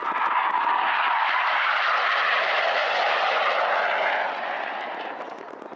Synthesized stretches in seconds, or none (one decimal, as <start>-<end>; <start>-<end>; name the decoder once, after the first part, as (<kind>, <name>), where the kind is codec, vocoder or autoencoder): 2.8-3.4 (vocoder, Vocos); 4.0-4.7